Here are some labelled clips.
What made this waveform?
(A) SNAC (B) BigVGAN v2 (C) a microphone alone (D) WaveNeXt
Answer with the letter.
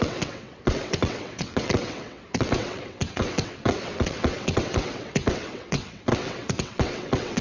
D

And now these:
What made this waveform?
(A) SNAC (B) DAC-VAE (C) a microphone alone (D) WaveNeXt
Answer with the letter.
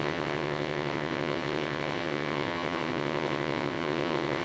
D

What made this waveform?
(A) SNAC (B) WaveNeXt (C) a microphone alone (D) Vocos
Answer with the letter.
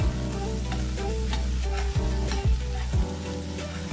C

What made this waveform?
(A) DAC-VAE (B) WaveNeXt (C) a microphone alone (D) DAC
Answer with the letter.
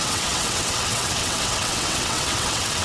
B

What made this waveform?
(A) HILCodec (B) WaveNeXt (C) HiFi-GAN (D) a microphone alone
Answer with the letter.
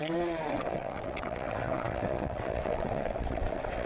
B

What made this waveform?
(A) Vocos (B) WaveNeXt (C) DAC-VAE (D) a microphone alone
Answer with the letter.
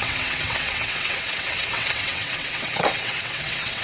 B